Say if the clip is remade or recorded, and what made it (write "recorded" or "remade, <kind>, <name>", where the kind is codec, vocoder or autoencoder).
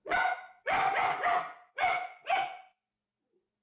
remade, vocoder, Vocos